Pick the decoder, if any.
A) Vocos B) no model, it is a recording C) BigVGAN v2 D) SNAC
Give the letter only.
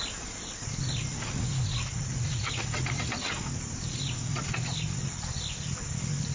B